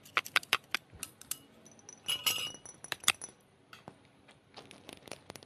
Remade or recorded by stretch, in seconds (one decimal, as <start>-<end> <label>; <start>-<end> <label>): 0.0-5.5 recorded